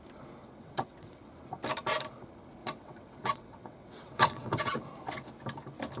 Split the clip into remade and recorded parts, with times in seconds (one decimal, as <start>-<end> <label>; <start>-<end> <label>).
0.0-0.4 recorded; 0.4-1.3 remade; 1.3-2.6 recorded; 2.6-4.8 remade; 4.8-6.0 recorded